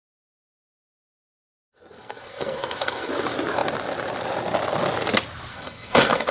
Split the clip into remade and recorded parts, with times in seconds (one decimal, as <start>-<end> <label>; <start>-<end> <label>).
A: 0.0-1.2 recorded; 1.2-3.1 remade; 3.1-5.5 recorded; 5.5-6.3 remade